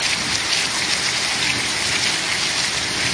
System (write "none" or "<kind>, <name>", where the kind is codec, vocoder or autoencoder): none